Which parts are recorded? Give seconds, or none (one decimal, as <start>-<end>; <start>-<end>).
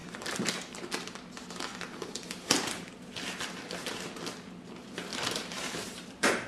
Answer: 0.8-1.7; 2.9-5.1